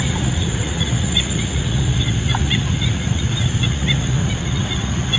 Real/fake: fake